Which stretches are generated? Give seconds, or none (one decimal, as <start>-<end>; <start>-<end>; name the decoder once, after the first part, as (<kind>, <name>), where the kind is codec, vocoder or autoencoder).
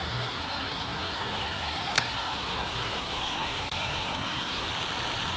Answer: 0.0-4.7 (codec, SNAC)